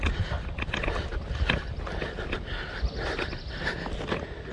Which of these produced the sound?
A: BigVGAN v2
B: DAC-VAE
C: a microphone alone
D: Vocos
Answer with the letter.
C